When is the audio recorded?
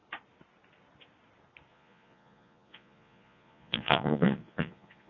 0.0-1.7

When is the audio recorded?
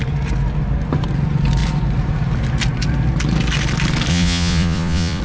0.0-4.1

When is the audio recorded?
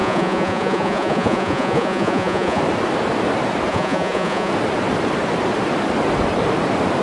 2.6-3.7; 4.5-7.0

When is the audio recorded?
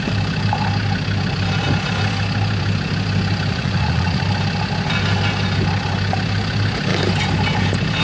0.0-3.5; 4.2-8.0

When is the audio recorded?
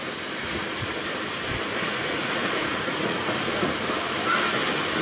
0.0-0.4; 1.0-1.7; 3.7-5.0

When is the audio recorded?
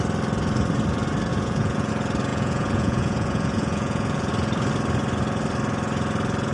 0.0-1.3; 1.9-2.3; 4.3-6.5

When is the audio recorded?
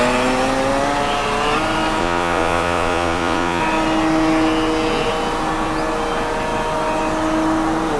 0.0-2.0; 3.6-8.0